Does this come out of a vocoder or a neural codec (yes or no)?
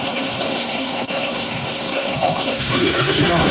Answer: yes